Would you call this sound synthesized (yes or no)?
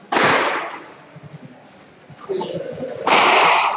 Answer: no